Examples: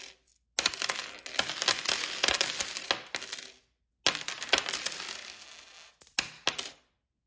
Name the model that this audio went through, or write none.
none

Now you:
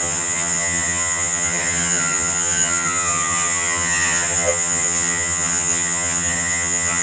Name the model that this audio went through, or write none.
vocoder, HiFi-GAN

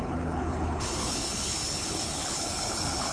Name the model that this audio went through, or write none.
codec, HILCodec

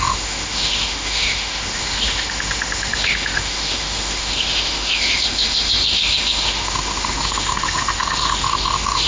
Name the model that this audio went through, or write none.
autoencoder, DAC-VAE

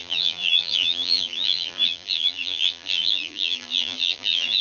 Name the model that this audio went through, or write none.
vocoder, BigVGAN v2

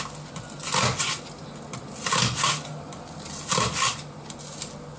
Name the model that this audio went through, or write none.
none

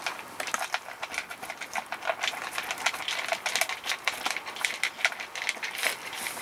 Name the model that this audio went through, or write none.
none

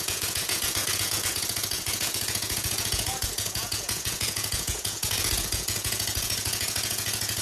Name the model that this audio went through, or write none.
vocoder, Vocos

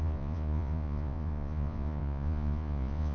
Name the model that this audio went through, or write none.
vocoder, Vocos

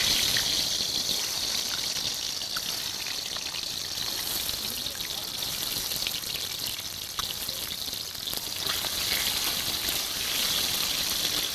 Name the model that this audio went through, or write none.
none